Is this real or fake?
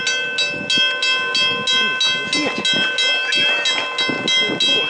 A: real